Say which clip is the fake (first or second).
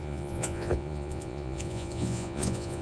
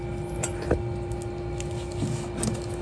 first